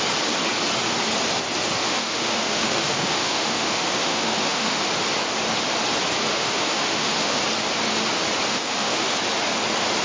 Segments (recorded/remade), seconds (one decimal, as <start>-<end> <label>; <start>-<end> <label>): 0.0-1.8 recorded; 1.8-4.8 remade; 4.8-6.3 recorded; 6.3-7.4 remade; 7.4-8.5 recorded; 8.5-9.1 remade; 9.1-10.0 recorded